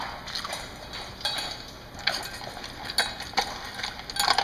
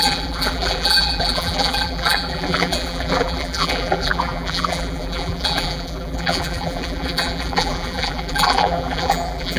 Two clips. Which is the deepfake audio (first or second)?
second